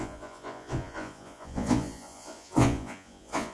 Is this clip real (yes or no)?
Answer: no